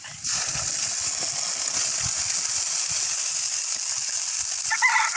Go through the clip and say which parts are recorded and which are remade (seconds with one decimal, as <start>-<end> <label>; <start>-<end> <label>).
0.0-5.2 recorded